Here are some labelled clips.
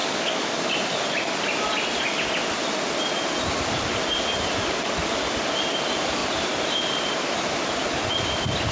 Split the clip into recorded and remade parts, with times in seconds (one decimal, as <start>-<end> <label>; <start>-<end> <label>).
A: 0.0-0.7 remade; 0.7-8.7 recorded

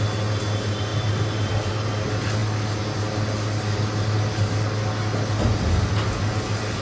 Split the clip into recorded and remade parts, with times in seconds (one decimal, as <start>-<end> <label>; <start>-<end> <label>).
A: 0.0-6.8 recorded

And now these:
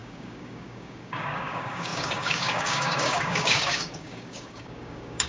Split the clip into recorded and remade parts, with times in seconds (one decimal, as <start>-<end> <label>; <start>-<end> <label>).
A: 0.0-5.3 remade

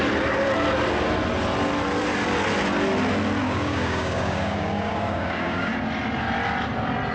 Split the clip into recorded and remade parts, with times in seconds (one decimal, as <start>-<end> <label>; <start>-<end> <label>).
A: 0.0-3.4 recorded; 3.4-5.7 remade; 5.7-7.1 recorded